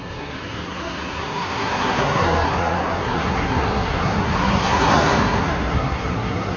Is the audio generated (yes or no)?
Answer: yes